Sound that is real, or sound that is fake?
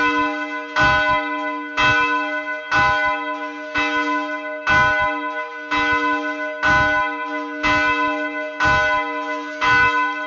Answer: real